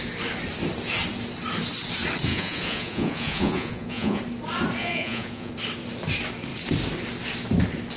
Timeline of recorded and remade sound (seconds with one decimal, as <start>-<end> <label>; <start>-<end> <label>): 0.0-2.3 recorded; 2.3-4.2 remade; 4.2-4.8 recorded; 4.8-5.5 remade; 5.5-8.0 recorded

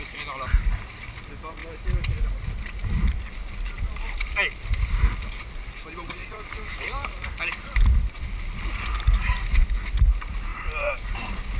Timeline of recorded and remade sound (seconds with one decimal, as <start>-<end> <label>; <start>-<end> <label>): 0.0-1.6 recorded; 1.6-5.5 remade; 5.5-6.2 recorded; 6.2-7.3 remade; 7.3-10.5 recorded; 10.5-11.1 remade; 11.1-11.6 recorded

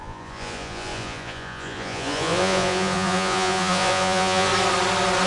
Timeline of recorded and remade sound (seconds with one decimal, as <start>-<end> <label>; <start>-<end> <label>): 0.0-4.5 remade; 4.5-5.3 recorded

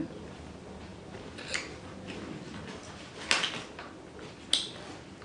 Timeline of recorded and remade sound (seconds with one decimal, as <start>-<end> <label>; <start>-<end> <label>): 0.0-5.2 recorded

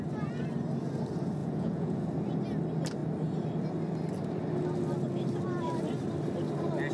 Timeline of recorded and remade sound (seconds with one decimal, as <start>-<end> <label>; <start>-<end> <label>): 0.0-1.4 recorded; 1.4-2.0 remade; 2.0-6.9 recorded

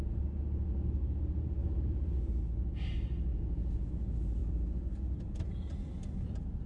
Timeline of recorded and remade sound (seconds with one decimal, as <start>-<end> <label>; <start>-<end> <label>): 0.0-1.6 recorded; 1.6-2.3 remade; 2.3-3.3 recorded; 3.3-3.9 remade; 3.9-6.7 recorded

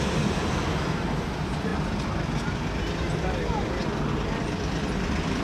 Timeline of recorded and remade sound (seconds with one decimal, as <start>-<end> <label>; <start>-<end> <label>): 0.0-5.4 recorded

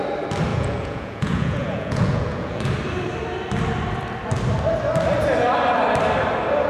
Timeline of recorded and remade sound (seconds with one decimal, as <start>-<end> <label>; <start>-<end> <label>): 0.0-0.5 recorded; 0.5-2.6 remade; 2.6-6.7 recorded